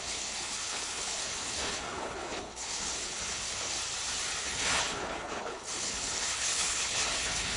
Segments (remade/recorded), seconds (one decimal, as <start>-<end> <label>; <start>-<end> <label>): 0.0-3.8 remade; 3.8-4.4 recorded; 4.4-7.6 remade